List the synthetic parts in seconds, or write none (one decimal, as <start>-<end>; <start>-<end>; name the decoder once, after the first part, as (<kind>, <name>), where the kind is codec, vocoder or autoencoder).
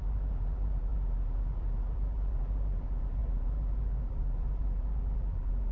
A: 0.0-5.7 (vocoder, BigVGAN v2)